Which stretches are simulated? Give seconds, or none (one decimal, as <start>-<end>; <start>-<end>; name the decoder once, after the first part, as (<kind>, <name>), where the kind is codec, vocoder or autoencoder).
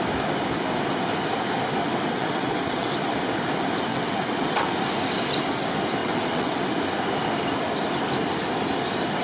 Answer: 1.8-2.9 (vocoder, WaveNeXt); 3.9-4.7; 6.0-6.7